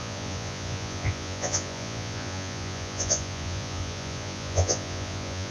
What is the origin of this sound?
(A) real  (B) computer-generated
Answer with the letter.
B